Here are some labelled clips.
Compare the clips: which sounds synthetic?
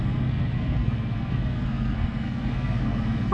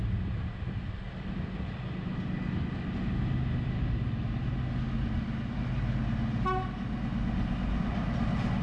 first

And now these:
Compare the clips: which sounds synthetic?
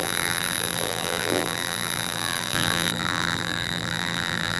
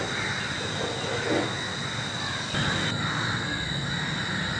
first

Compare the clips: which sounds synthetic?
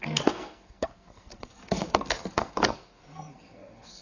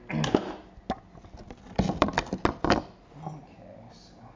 first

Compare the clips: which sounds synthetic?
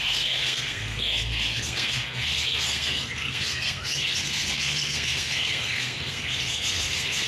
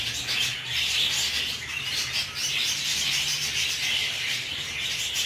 first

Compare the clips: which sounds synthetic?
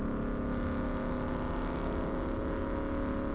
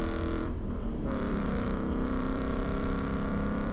second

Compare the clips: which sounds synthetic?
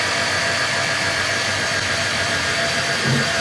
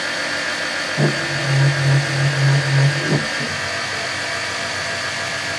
first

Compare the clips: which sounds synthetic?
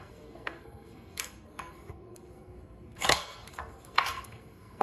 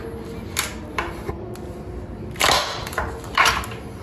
first